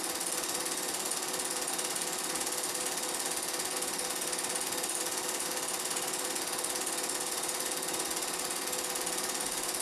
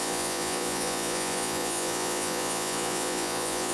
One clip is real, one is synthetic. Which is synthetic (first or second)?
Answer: second